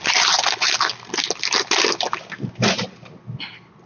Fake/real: real